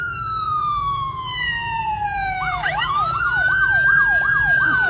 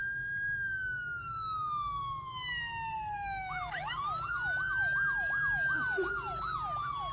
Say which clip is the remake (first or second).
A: first